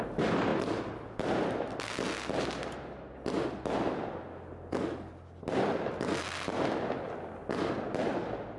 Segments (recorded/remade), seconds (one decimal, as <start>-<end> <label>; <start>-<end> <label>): 0.0-8.6 recorded